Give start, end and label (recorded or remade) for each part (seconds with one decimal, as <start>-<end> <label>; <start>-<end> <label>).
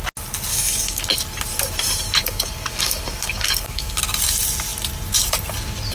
0.0-0.5 recorded; 0.5-1.0 remade; 1.0-2.2 recorded; 2.2-4.0 remade; 4.0-5.9 recorded